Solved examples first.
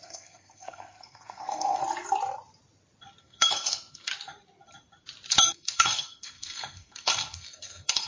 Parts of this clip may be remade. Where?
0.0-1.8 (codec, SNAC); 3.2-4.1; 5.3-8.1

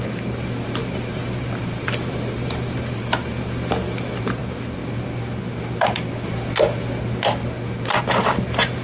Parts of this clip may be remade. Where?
0.0-3.3 (vocoder, BigVGAN v2); 4.2-4.8; 8.0-8.8

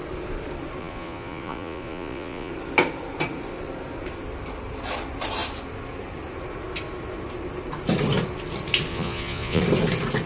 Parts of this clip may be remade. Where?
0.8-2.5 (vocoder, Vocos); 8.9-9.6